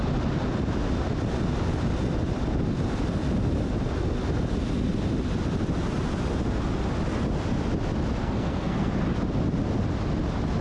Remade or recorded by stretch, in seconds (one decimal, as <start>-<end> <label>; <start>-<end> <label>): 0.0-8.2 recorded; 8.2-8.9 remade; 8.9-10.6 recorded

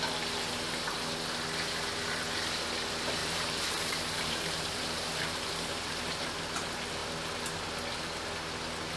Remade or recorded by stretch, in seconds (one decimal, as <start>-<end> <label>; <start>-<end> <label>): 0.0-3.2 recorded; 3.2-6.2 remade; 6.2-9.0 recorded

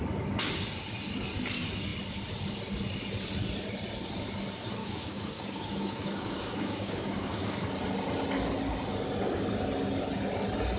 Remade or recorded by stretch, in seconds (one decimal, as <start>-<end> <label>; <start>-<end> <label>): 0.0-4.8 recorded; 4.8-7.7 remade; 7.7-10.8 recorded

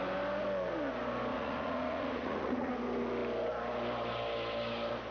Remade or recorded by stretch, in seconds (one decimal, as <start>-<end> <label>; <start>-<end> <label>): 0.0-1.3 recorded; 1.3-2.7 remade; 2.7-5.1 recorded

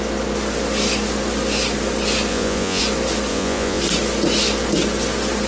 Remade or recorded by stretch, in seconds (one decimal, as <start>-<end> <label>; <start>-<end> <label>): 0.0-2.3 recorded; 2.3-2.8 remade; 2.8-3.3 recorded; 3.3-3.8 remade; 3.8-5.5 recorded

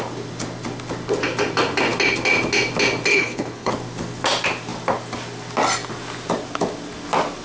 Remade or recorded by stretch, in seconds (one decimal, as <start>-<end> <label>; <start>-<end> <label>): 0.0-3.1 recorded; 3.1-3.7 remade; 3.7-7.4 recorded